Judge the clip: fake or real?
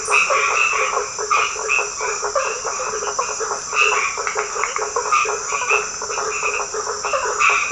real